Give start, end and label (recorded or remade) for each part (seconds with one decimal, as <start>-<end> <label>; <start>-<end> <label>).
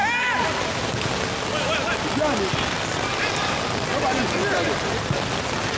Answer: 0.0-5.8 recorded